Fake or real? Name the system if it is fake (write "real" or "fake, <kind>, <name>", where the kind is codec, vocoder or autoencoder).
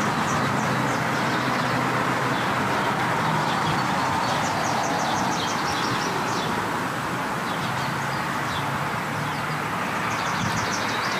real